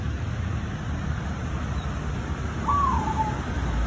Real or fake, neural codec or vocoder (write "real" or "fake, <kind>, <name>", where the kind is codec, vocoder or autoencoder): real